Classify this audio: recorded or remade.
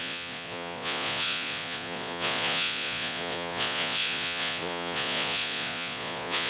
remade